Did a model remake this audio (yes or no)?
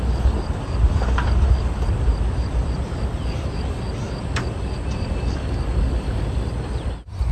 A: yes